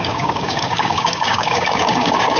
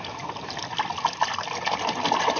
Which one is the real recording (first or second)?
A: second